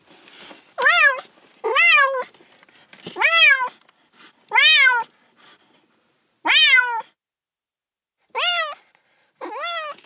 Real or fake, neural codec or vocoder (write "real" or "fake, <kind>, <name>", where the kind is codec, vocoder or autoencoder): real